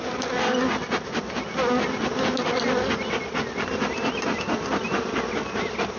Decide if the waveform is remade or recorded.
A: recorded